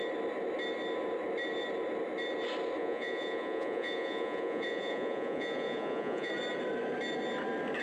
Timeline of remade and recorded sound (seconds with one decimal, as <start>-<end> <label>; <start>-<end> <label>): 0.0-2.8 recorded; 2.8-6.3 remade; 6.3-7.8 recorded